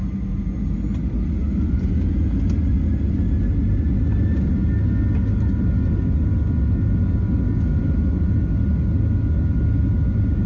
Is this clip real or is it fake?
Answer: real